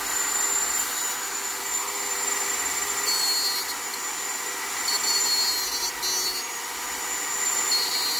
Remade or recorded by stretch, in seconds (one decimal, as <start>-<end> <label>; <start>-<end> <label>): 0.0-5.5 remade; 5.5-6.5 recorded; 6.5-8.2 remade